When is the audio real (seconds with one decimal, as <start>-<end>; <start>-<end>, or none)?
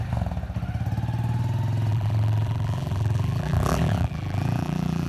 0.0-1.9